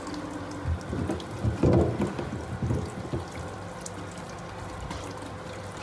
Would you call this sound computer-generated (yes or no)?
no